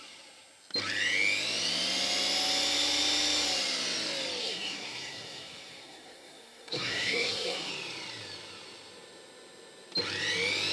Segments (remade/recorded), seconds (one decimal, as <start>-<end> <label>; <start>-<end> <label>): 0.0-4.4 recorded; 4.4-7.7 remade; 7.7-10.7 recorded